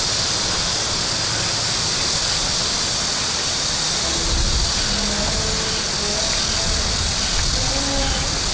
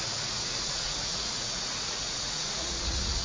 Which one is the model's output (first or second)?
second